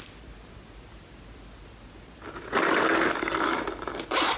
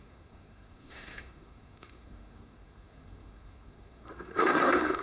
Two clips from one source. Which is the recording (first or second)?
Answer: first